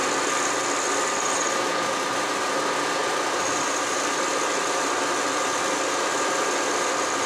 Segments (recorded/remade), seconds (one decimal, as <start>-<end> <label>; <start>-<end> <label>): 0.0-7.3 recorded